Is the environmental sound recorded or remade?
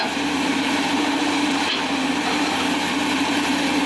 remade